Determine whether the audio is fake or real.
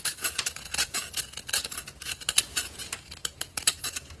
fake